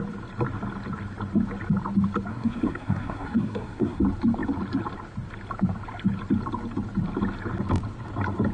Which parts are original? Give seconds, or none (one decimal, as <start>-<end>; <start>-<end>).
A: 0.0-2.3; 4.0-8.5